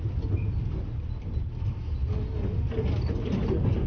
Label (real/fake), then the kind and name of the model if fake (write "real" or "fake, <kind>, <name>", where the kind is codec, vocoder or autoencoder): real